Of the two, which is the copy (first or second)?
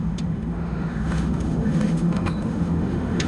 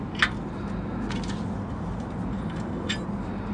first